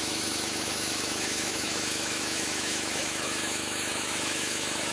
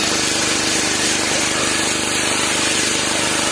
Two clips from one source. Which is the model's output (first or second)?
first